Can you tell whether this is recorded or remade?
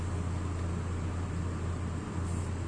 recorded